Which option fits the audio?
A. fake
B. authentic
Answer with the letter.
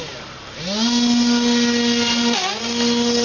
B